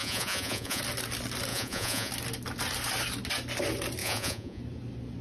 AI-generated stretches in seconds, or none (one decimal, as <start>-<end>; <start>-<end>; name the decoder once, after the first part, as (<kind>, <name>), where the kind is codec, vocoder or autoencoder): 0.0-0.8 (vocoder, Vocos); 1.5-2.1; 4.0-4.6

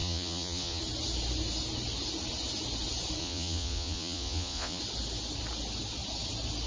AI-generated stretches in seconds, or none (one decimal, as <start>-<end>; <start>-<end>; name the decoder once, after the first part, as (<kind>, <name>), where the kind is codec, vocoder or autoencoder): 0.0-0.8 (vocoder, Vocos); 3.2-4.8

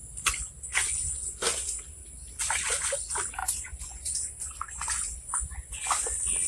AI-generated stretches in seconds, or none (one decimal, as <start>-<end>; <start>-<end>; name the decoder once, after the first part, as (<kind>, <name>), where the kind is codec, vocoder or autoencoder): 0.7-1.4 (vocoder, Vocos); 3.4-5.8

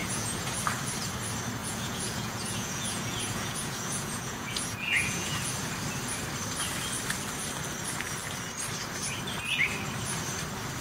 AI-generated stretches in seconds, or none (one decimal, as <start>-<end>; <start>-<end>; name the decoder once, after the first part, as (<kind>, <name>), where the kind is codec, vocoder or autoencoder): 0.0-0.6 (vocoder, Vocos); 1.6-5.5

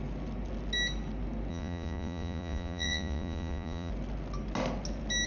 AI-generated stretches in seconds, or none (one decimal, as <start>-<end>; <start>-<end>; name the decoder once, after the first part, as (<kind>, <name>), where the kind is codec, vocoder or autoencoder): 1.5-3.9 (vocoder, Vocos)

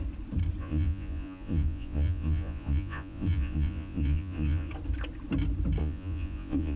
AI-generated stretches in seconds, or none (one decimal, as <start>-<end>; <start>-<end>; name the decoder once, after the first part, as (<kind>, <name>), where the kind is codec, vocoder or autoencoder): 0.6-4.7 (vocoder, Vocos); 5.8-6.8